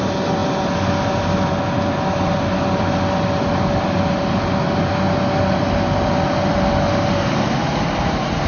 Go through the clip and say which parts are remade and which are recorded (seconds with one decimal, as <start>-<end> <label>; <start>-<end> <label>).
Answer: 0.0-8.5 recorded